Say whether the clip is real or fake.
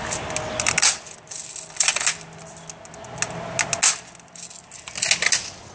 real